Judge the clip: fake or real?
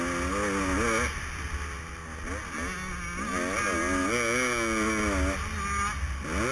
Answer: real